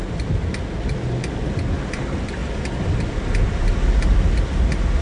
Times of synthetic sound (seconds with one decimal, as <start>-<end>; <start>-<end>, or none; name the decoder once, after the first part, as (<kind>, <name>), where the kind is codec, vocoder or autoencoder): none